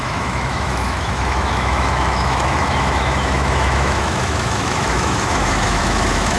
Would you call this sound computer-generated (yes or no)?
yes